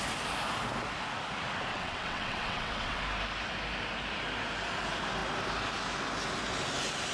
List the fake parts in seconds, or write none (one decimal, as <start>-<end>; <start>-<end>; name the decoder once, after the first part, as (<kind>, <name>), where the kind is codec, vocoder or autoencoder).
1.7-3.0 (vocoder, WaveNeXt)